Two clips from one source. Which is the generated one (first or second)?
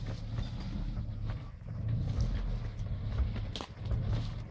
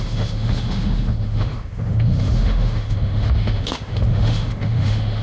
second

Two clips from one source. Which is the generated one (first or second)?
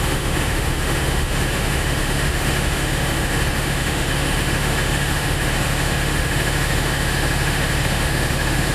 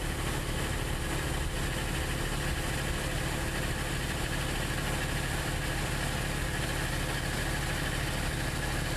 first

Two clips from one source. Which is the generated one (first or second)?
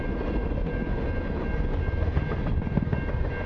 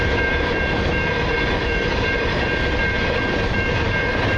second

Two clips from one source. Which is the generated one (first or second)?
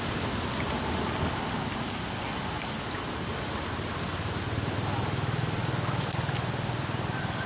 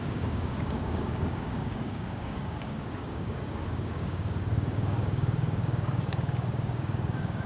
second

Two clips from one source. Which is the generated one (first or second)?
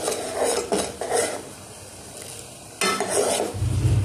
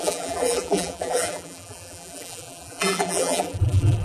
second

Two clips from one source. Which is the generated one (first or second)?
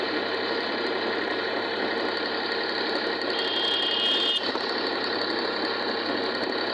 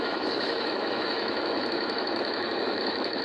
second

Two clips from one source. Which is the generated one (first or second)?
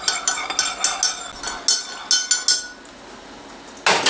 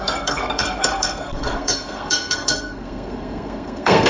second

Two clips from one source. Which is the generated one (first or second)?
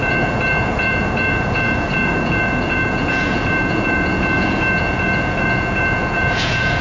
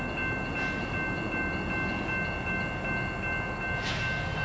first